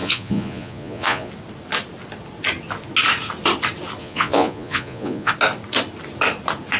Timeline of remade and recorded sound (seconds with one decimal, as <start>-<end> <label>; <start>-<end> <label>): 0.0-1.3 remade; 1.3-4.0 recorded; 4.0-5.3 remade; 5.3-6.8 recorded